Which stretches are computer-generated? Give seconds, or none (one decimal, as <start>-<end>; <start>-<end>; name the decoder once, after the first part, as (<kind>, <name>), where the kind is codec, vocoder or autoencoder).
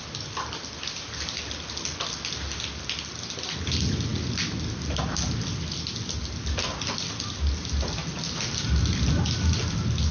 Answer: none